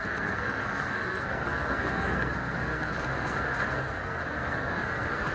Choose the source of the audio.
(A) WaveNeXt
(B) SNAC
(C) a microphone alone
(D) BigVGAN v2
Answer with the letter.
B